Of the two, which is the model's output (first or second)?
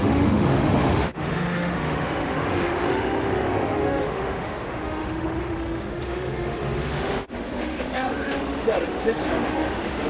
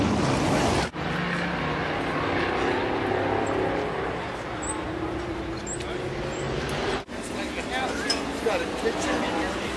first